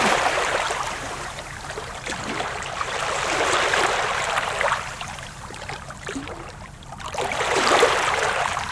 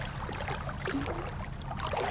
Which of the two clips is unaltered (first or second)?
second